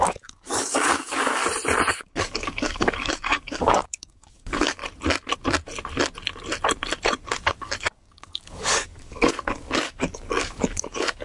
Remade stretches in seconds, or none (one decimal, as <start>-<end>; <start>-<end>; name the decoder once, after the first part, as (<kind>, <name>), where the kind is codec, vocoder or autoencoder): 0.0-1.4 (codec, DAC); 1.9-4.8; 7.6-11.2